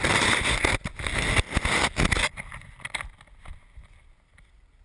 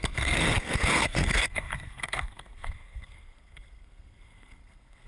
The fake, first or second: second